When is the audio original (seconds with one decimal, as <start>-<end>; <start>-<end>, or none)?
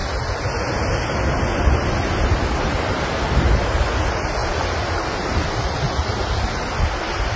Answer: 0.0-7.4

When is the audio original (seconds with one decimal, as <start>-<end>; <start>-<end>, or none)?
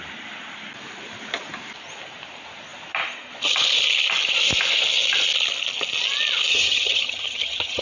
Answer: 0.0-6.5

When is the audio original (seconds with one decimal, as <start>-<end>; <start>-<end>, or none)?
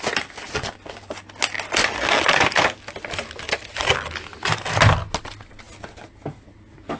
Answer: 0.0-7.0